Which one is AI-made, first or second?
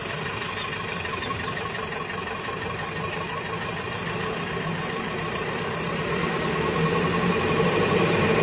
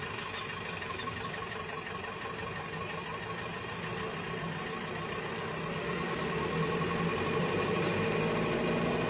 first